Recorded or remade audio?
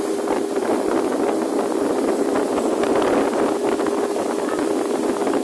recorded